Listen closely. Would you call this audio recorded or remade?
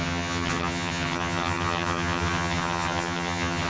remade